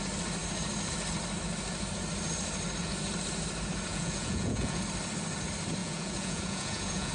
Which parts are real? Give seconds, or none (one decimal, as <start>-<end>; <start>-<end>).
0.0-3.9; 4.8-5.8